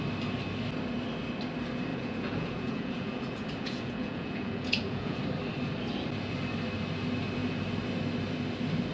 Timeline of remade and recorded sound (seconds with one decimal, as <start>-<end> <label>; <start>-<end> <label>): 0.0-1.9 recorded; 1.9-5.2 remade; 5.2-8.9 recorded